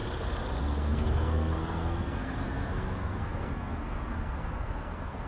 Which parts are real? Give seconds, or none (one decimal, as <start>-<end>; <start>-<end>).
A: 0.0-0.6